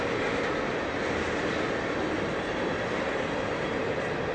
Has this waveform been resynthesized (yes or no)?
no